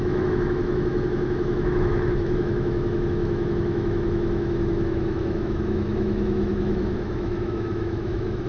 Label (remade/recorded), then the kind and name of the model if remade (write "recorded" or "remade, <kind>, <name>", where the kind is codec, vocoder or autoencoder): remade, autoencoder, DAC-VAE